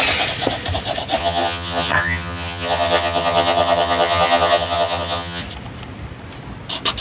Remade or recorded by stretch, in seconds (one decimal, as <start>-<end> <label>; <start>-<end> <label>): 0.0-1.2 recorded; 1.2-5.4 remade; 5.4-7.0 recorded